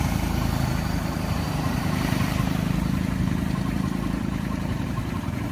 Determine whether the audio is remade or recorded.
remade